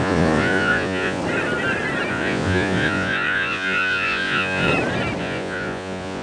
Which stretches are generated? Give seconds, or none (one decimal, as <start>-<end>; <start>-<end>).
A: 0.0-1.2; 2.1-4.7; 5.2-6.2

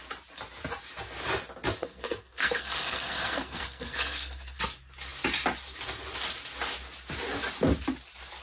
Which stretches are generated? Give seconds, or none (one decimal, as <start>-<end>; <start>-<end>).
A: 1.8-4.6

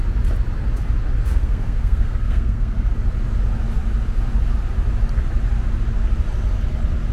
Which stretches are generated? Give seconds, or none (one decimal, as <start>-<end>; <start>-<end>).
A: 1.2-2.9

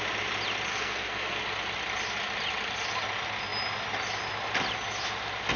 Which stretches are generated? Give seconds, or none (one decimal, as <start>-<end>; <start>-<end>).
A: 0.7-1.4

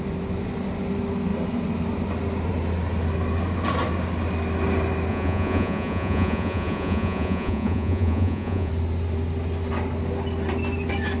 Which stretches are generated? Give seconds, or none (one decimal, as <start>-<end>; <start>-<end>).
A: 5.1-8.7

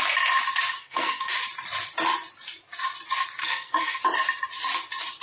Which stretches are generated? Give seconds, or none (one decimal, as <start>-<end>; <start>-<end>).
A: 0.8-1.3; 3.4-4.0

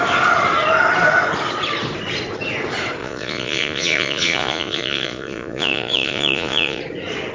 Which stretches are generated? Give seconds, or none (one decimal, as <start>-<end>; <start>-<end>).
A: 3.0-6.8